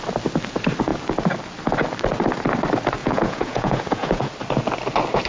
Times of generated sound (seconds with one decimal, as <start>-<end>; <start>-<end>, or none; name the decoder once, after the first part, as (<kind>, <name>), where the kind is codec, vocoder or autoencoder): 3.0-4.3 (vocoder, Vocos)